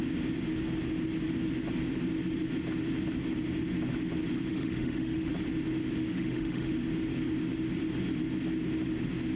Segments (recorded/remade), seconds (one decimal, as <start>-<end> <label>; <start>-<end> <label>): 0.0-4.5 recorded; 4.5-5.3 remade; 5.3-6.1 recorded; 6.1-6.7 remade; 6.7-9.4 recorded